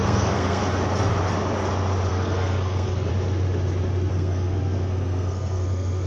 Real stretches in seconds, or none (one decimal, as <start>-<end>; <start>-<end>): 0.6-2.1; 3.1-4.1